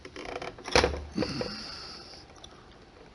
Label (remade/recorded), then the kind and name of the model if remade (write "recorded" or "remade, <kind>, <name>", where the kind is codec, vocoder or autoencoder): remade, vocoder, BigVGAN v2